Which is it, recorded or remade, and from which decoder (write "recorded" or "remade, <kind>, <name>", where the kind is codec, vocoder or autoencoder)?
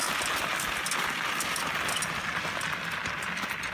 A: recorded